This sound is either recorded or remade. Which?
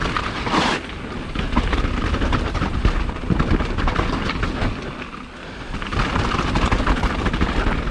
recorded